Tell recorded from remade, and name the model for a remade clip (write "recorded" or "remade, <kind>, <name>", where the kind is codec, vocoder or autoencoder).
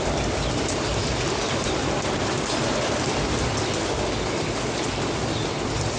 recorded